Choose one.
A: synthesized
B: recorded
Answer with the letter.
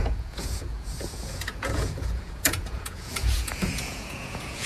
A